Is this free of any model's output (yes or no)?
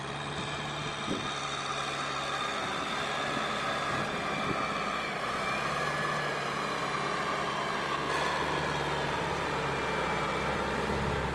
yes